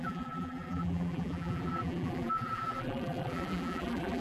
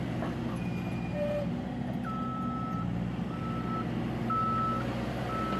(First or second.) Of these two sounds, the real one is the second